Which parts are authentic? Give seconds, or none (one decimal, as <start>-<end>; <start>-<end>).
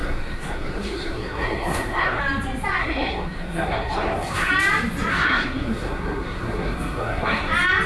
2.2-2.8; 4.5-5.1; 7.4-7.9